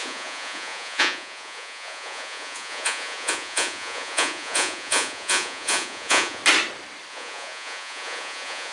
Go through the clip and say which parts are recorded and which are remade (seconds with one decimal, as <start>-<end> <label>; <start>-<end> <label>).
0.0-6.4 remade; 6.4-7.1 recorded; 7.1-8.7 remade